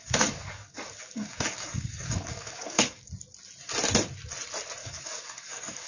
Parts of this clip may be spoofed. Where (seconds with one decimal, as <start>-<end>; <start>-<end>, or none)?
0.0-3.1; 4.8-5.9